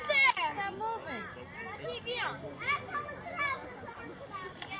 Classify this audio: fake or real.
real